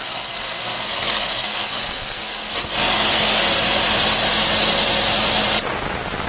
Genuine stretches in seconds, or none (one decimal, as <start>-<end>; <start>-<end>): 3.6-6.3